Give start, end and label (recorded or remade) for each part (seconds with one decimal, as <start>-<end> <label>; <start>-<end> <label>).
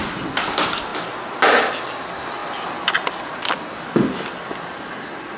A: 0.0-0.9 recorded; 0.9-1.4 remade; 1.4-2.4 recorded; 2.4-4.9 remade; 4.9-5.4 recorded